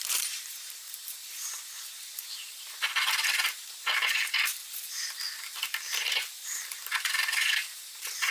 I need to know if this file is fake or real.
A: fake